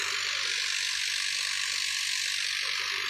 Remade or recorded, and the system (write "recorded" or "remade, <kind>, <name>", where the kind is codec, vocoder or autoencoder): recorded